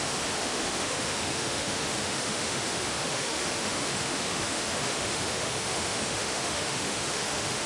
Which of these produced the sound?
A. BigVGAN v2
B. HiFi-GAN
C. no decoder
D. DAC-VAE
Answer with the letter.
D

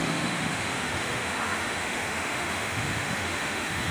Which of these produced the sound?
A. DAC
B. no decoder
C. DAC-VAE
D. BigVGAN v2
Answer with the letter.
C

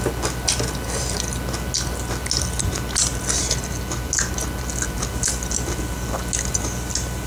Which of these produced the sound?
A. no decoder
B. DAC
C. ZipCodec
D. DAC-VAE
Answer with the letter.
A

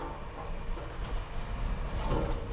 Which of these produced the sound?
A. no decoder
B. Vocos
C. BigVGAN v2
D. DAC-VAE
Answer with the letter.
A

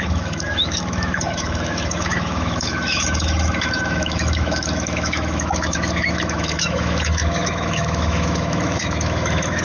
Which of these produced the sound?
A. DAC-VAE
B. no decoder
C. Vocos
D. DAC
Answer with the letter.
A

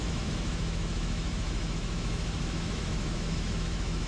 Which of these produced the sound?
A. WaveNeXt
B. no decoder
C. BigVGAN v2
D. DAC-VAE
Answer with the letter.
D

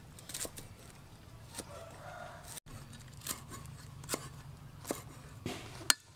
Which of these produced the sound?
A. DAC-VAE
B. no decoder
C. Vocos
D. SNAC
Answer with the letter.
B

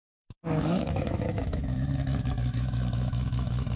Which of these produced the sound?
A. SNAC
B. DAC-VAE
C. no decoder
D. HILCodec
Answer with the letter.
B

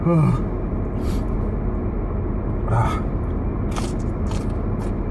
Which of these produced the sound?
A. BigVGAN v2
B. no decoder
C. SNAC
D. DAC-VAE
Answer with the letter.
B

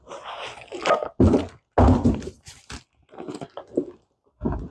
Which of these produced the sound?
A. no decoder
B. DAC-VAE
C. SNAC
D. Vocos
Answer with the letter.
A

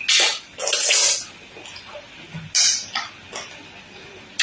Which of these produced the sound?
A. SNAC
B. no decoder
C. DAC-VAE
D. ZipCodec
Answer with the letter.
B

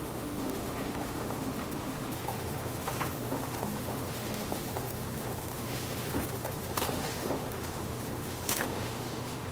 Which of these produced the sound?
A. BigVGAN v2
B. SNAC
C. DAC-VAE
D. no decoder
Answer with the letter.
C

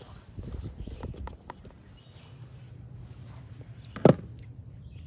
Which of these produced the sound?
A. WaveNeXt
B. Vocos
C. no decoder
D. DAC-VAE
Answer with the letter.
C